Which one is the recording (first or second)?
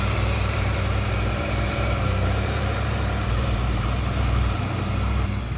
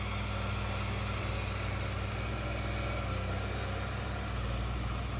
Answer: second